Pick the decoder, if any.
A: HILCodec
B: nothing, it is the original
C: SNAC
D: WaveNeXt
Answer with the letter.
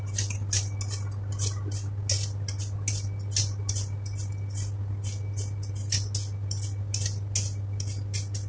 B